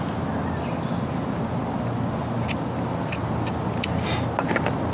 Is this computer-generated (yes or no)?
no